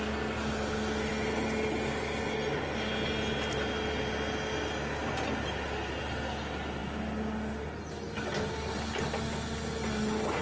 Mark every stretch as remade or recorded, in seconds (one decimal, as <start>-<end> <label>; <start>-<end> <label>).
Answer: 0.0-10.4 recorded